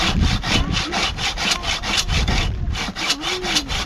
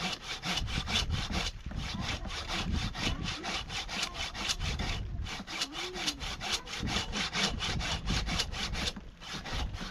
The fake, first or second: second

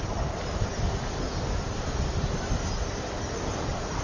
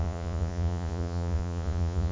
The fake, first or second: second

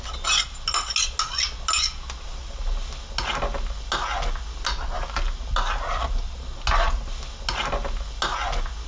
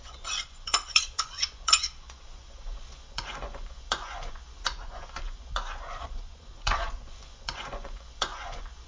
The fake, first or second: second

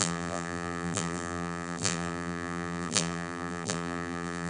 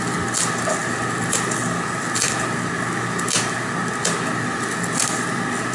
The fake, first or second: first